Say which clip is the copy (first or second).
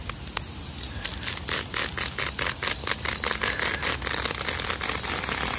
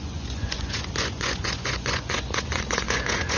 second